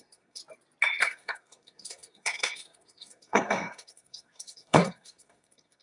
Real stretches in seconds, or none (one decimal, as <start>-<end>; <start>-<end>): 0.4-1.0